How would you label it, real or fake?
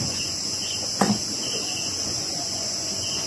fake